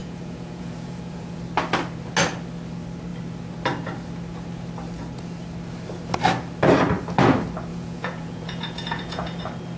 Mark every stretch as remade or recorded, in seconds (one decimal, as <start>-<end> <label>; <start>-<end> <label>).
0.0-1.4 remade; 1.4-7.7 recorded; 7.7-9.4 remade; 9.4-9.8 recorded